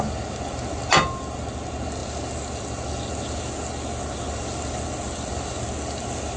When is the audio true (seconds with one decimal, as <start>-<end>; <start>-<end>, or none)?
0.0-6.4